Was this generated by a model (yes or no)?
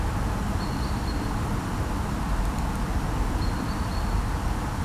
no